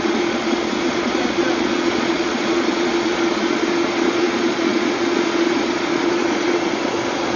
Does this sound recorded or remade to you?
remade